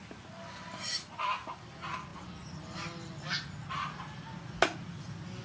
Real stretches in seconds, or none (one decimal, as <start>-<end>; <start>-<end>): 0.0-5.4